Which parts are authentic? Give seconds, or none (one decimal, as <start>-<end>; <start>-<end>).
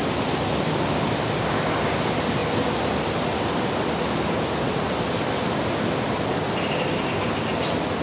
0.0-8.0